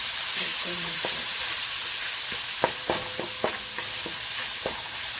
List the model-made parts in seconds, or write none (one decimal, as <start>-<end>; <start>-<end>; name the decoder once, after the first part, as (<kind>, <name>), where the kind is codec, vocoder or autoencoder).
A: 0.0-1.8 (vocoder, BigVGAN v2); 4.6-5.2